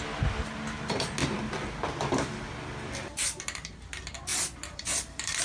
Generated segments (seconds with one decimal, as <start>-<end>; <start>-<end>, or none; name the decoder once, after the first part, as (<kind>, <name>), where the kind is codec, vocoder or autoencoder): 1.2-3.4 (vocoder, BigVGAN v2); 4.3-5.4